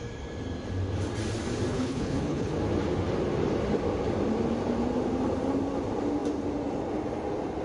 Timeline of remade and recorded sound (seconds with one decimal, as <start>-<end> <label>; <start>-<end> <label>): 0.0-1.7 recorded; 1.7-2.5 remade; 2.5-7.6 recorded